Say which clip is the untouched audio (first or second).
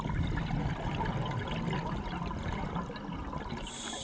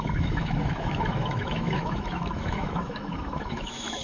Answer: first